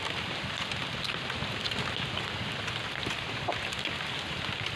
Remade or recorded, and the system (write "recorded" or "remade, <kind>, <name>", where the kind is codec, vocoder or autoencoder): recorded